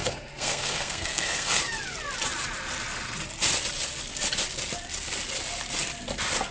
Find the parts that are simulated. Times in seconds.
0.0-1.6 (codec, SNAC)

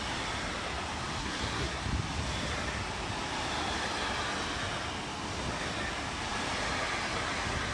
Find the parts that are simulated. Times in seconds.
1.2-1.8 (codec, SNAC)

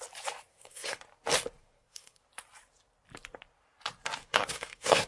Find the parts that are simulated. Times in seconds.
0.5-1.0 (codec, SNAC); 1.6-2.2; 4.2-5.1